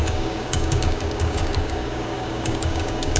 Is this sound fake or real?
fake